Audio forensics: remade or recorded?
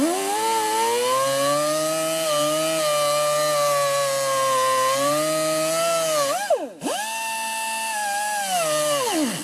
recorded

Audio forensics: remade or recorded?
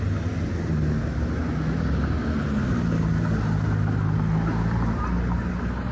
recorded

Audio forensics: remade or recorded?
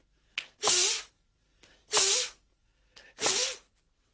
recorded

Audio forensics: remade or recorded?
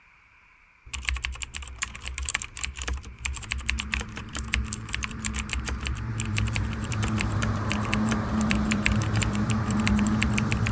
remade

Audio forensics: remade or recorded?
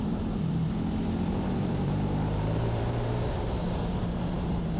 remade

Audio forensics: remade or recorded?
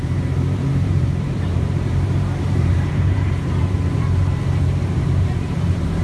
remade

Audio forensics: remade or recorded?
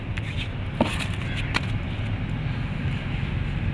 recorded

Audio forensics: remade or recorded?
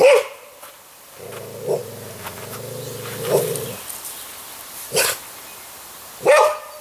recorded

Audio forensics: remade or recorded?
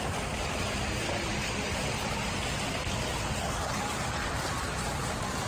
remade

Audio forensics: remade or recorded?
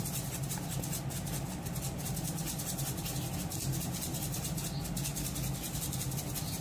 recorded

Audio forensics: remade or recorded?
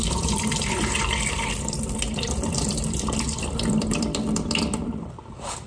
remade